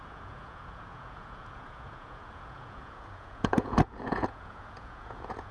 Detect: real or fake fake